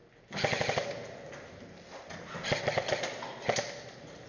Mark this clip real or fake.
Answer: real